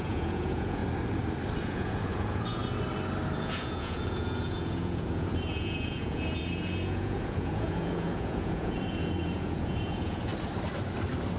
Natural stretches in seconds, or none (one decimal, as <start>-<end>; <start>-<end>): 0.8-1.6; 2.6-3.4; 10.3-11.4